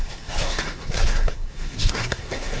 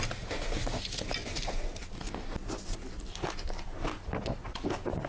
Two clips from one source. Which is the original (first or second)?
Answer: second